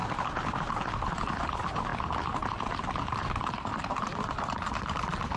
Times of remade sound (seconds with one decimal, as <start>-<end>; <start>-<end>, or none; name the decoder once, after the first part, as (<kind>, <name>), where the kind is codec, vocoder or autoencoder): none